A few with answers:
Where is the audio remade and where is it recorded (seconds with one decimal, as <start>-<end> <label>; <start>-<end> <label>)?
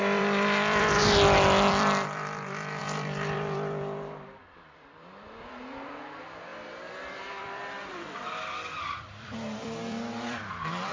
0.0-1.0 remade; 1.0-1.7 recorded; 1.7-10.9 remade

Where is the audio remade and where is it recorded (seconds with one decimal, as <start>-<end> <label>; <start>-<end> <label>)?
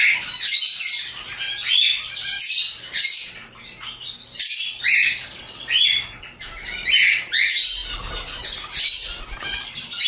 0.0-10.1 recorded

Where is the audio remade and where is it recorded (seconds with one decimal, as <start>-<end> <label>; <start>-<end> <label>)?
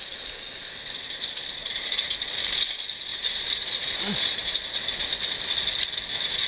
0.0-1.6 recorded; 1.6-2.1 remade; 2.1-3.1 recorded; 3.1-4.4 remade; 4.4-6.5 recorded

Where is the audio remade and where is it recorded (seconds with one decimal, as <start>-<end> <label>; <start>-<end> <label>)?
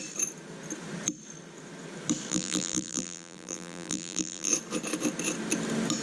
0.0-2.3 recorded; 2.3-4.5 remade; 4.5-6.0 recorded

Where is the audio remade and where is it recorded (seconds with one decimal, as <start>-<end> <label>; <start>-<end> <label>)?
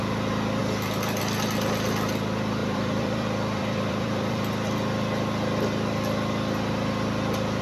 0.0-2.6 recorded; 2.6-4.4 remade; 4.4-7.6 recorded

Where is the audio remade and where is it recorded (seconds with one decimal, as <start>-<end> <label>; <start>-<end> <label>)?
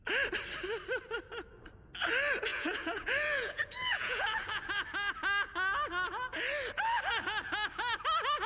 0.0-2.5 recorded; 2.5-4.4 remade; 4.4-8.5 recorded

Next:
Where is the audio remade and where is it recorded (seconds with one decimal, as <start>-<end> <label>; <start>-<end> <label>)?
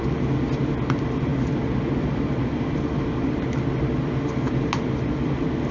0.0-5.7 recorded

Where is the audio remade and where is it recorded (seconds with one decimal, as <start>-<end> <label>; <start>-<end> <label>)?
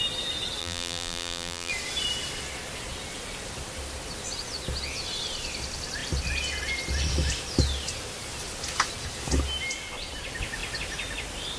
0.0-0.6 recorded; 0.6-1.7 remade; 1.7-11.6 recorded